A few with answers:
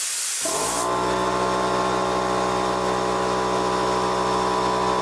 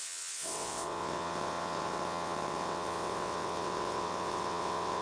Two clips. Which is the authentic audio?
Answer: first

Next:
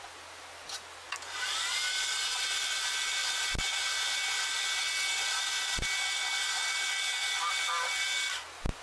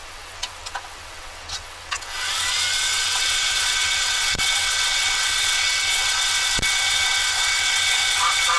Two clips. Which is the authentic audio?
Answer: first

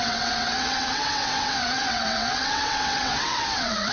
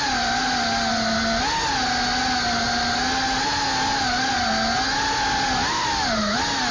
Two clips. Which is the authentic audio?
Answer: second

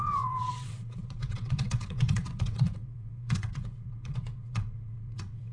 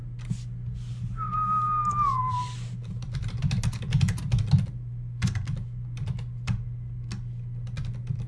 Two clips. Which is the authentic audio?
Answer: second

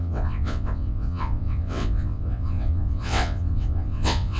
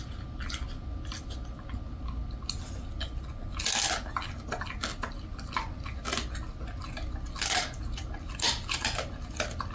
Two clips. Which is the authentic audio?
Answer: second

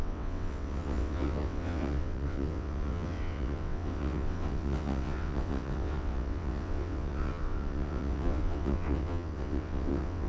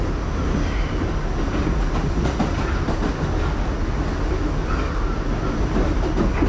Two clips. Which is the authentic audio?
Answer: second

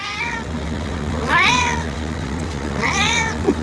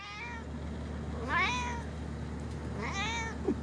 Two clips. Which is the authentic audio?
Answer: second